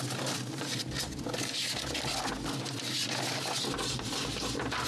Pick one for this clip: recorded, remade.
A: recorded